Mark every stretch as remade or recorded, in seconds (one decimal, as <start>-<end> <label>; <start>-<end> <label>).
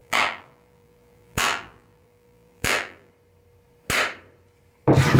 0.0-3.1 remade; 3.1-5.2 recorded